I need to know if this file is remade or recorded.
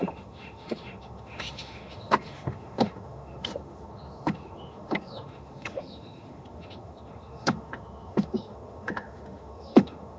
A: remade